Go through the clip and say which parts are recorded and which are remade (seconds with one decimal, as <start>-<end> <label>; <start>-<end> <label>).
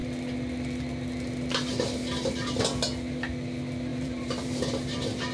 0.0-3.9 recorded; 3.9-4.6 remade; 4.6-5.3 recorded